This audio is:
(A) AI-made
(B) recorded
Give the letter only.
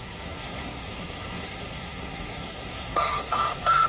A